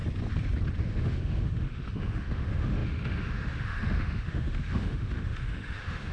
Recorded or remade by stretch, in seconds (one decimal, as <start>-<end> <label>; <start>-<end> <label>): 0.0-0.8 recorded; 0.8-6.1 remade